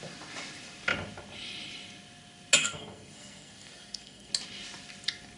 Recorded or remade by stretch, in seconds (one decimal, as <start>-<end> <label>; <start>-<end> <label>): 0.0-2.6 recorded; 2.6-4.3 remade; 4.3-5.4 recorded